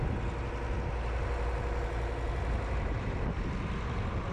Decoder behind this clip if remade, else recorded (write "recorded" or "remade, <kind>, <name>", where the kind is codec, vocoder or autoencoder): recorded